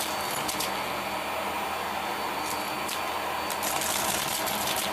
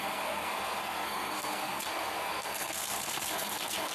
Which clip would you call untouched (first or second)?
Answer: first